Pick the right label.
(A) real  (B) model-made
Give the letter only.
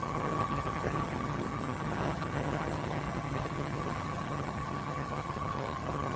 B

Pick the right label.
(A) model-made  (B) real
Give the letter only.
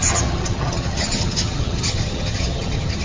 A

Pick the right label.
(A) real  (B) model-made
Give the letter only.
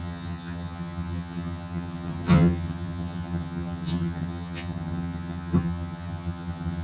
B